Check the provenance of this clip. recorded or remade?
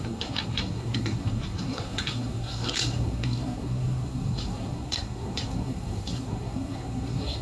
remade